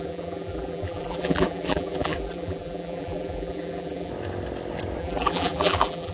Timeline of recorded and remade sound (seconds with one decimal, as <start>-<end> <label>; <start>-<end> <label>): 0.0-4.1 remade; 4.1-5.0 recorded; 5.0-6.1 remade